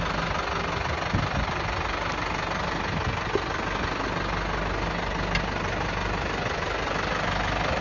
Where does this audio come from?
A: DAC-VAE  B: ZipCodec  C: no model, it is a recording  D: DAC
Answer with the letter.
C